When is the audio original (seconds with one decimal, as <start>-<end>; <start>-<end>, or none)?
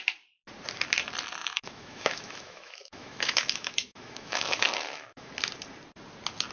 0.0-1.4; 5.3-6.5